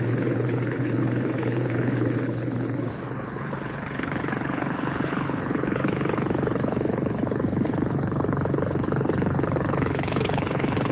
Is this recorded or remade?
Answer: remade